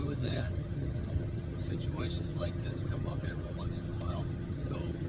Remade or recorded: remade